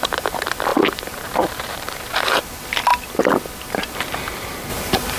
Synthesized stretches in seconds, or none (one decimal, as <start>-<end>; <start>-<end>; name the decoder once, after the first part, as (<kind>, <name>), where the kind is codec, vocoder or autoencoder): 0.7-2.4 (vocoder, BigVGAN v2); 4.7-5.2